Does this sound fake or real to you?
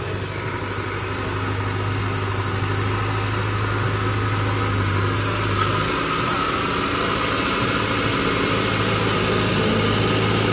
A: real